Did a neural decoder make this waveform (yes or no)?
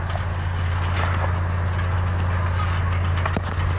no